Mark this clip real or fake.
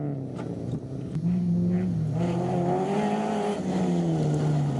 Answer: real